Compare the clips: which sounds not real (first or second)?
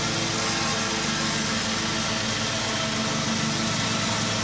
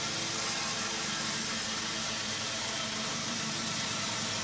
second